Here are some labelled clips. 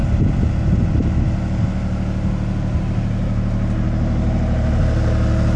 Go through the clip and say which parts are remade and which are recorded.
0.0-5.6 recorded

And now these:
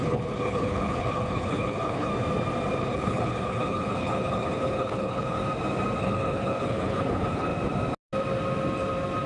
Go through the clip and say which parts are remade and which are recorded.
0.0-2.1 remade; 2.1-2.8 recorded; 2.8-5.4 remade; 5.4-6.0 recorded; 6.0-7.5 remade; 7.5-9.3 recorded

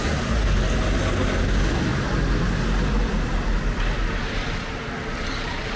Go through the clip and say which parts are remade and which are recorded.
0.0-5.8 recorded